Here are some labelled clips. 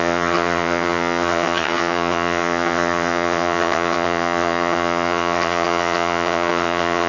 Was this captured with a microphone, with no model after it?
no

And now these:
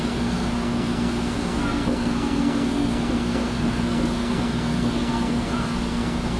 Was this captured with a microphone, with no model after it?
no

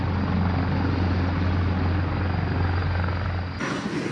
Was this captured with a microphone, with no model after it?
yes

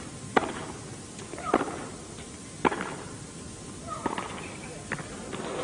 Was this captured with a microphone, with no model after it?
yes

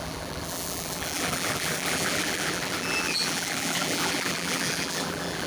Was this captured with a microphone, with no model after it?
no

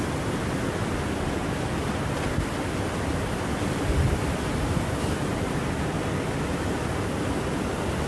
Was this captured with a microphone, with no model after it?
yes